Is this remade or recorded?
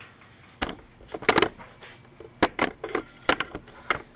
recorded